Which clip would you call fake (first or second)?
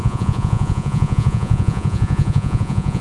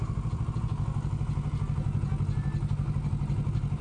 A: first